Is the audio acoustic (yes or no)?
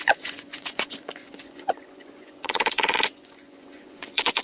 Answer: no